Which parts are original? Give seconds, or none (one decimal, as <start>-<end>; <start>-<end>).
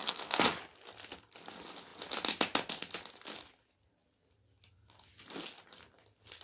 0.6-6.4